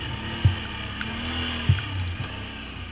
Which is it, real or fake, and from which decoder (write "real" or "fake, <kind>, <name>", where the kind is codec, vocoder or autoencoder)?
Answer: real